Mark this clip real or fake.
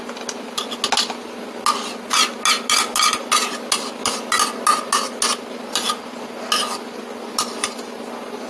real